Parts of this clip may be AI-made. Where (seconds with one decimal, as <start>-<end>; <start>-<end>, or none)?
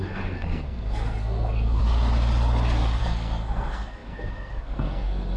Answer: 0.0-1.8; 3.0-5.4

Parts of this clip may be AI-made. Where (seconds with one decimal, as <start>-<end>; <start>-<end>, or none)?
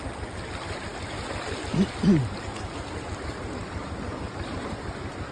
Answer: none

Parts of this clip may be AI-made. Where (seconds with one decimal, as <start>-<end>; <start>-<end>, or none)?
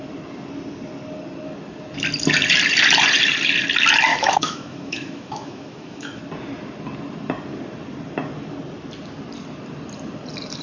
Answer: 4.1-6.2